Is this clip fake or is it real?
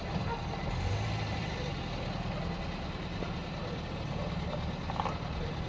real